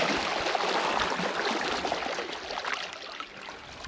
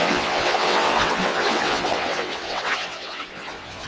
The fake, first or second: second